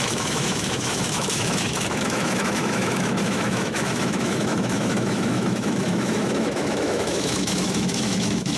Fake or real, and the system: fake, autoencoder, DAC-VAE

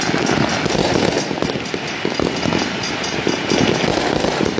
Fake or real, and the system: real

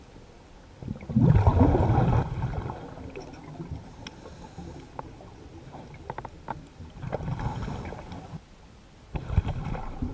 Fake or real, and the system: real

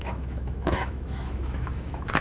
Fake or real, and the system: fake, autoencoder, DAC-VAE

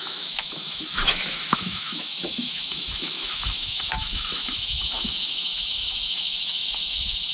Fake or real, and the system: fake, autoencoder, DAC-VAE